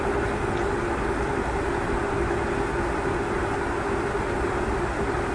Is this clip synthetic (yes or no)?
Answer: no